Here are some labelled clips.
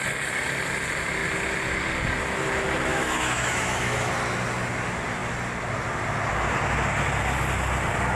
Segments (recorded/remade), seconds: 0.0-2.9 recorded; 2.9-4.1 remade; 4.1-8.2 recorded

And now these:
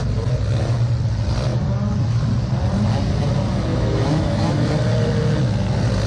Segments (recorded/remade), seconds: 0.0-3.7 recorded; 3.7-4.7 remade; 4.7-6.1 recorded